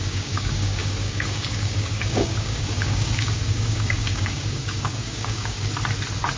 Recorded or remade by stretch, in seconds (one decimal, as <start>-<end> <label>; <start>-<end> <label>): 0.0-5.7 remade; 5.7-6.4 recorded

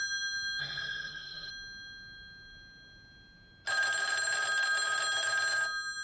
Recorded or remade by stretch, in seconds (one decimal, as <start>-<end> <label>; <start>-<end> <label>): 0.0-0.6 recorded; 0.6-1.5 remade; 1.5-6.0 recorded